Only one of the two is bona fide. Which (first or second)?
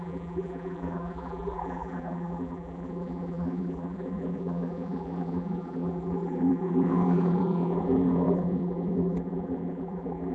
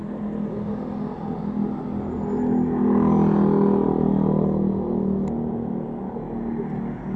second